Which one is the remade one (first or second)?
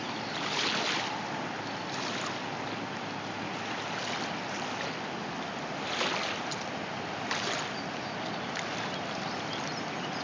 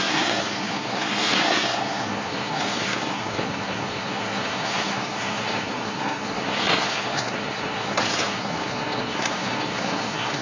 second